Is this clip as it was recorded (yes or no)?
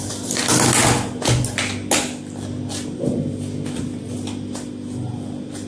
yes